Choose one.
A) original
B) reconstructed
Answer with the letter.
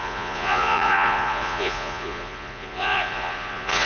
B